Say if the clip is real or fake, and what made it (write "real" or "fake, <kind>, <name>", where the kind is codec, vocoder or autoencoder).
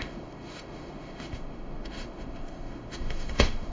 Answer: fake, autoencoder, DAC-VAE